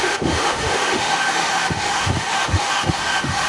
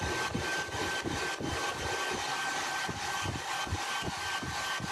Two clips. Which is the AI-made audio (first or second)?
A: first